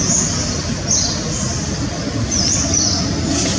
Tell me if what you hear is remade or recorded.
recorded